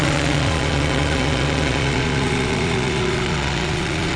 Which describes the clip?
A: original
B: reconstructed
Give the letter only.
B